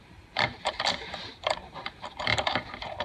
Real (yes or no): no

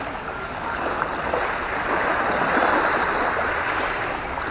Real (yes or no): yes